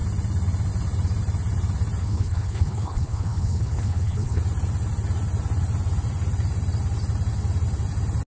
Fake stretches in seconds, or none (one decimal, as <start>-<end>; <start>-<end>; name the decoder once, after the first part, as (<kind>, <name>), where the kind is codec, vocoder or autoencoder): 2.0-4.4 (codec, HILCodec)